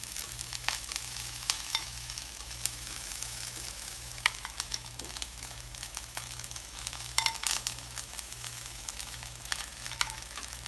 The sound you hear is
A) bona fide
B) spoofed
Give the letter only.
B